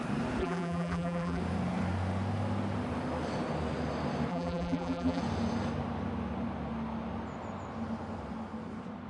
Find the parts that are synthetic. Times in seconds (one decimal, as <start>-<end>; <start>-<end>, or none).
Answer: 0.4-1.4; 4.3-5.2

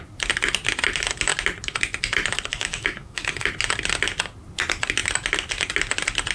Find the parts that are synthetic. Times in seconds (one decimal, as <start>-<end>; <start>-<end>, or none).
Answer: 2.5-3.5

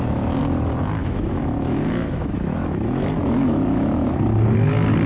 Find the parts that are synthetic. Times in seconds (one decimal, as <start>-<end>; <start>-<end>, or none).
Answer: 1.0-4.1